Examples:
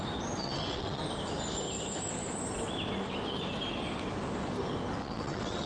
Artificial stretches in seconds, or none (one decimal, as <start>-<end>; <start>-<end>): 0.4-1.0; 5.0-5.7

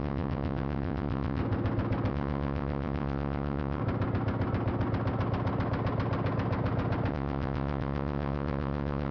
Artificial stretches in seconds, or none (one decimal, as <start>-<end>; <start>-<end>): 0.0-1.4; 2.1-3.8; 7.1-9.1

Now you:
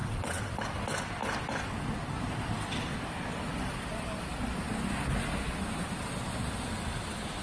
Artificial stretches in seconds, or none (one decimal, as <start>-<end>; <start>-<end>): 0.0-0.6

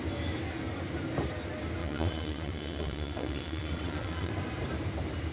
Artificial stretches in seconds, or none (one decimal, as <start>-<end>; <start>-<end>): 1.8-4.3